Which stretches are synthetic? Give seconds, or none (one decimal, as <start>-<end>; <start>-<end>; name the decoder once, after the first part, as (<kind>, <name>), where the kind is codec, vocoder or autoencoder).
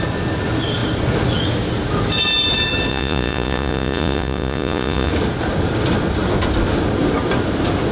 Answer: 2.9-5.1 (vocoder, Vocos)